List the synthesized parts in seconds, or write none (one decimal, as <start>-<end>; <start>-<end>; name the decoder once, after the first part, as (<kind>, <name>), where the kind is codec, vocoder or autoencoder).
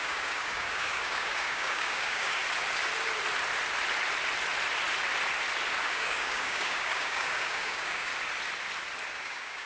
0.0-2.4 (codec, DAC); 5.8-8.1; 9.1-9.7